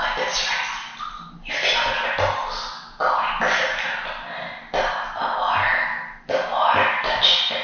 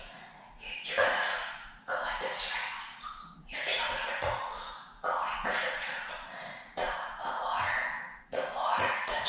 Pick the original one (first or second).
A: first